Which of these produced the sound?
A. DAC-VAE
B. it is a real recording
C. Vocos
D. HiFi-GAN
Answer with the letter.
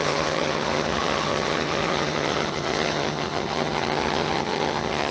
D